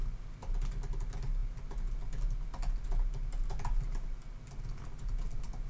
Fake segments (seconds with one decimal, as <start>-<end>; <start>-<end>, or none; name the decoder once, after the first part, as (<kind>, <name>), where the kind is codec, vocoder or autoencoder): none